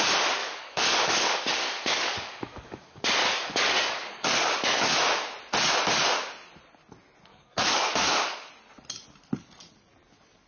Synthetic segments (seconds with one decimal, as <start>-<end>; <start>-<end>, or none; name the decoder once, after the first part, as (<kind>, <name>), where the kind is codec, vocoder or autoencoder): 0.4-4.5 (codec, DAC); 7.3-8.5